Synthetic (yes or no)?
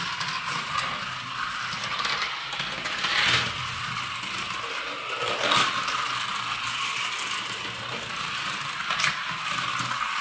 no